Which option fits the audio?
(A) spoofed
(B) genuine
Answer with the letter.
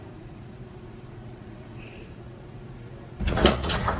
A